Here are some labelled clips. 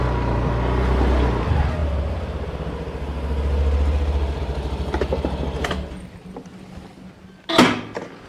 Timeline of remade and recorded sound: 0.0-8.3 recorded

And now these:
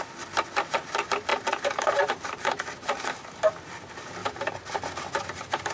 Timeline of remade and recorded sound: 0.0-1.3 recorded; 1.3-3.1 remade; 3.1-4.2 recorded; 4.2-4.9 remade; 4.9-5.7 recorded

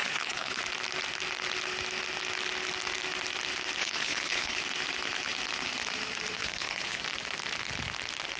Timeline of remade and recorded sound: 0.0-0.6 remade; 0.6-3.8 recorded; 3.8-4.6 remade; 4.6-6.4 recorded; 6.4-7.0 remade; 7.0-8.4 recorded

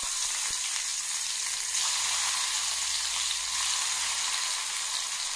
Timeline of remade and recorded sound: 0.0-5.4 recorded

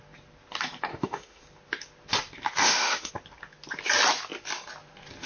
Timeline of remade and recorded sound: 0.0-0.9 recorded; 0.9-1.4 remade; 1.4-2.6 recorded; 2.6-3.1 remade; 3.1-5.3 recorded

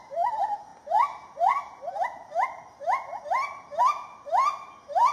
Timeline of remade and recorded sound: 0.0-5.1 recorded